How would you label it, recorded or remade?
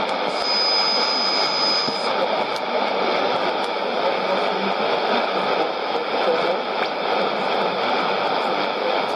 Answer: recorded